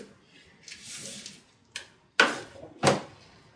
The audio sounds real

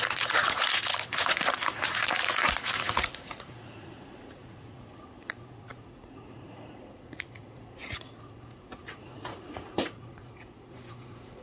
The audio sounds fake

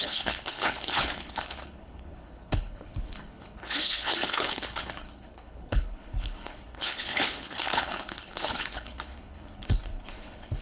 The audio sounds fake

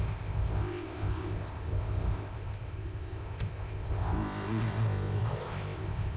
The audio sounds fake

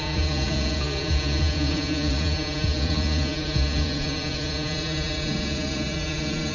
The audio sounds fake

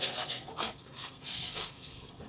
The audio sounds fake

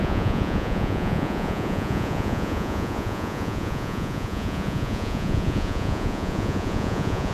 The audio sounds fake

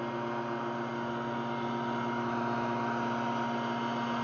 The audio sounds real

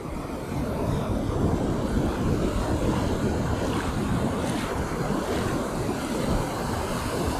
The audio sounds real